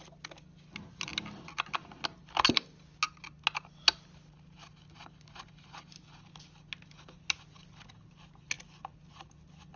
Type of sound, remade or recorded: recorded